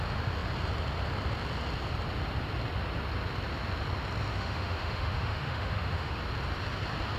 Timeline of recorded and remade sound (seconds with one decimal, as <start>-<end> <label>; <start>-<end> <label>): 0.0-4.3 recorded; 4.3-6.2 remade; 6.2-7.2 recorded